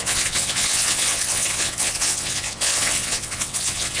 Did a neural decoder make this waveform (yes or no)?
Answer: yes